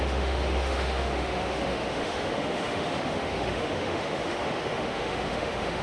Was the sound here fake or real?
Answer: fake